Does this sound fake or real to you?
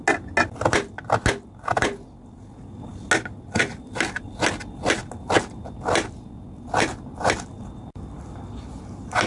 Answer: real